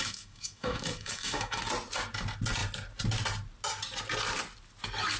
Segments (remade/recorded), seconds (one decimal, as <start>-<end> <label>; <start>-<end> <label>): 0.0-1.6 remade; 1.6-5.2 recorded